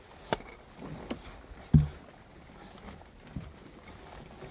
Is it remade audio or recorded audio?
recorded